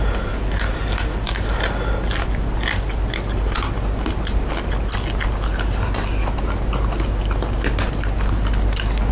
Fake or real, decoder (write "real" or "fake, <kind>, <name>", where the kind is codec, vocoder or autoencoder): real